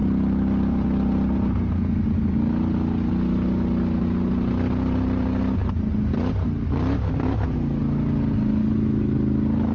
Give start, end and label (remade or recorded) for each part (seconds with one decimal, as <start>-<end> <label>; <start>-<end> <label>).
0.0-9.7 recorded